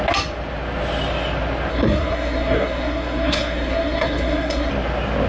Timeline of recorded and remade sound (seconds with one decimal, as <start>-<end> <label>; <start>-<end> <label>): 0.0-1.7 recorded; 1.7-4.7 remade; 4.7-5.3 recorded